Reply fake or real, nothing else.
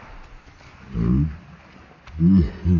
real